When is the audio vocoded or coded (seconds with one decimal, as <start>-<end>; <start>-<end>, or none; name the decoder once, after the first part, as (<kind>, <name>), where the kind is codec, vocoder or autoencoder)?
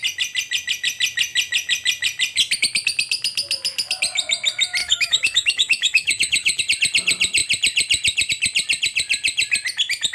4.8-6.6 (autoencoder, DAC-VAE)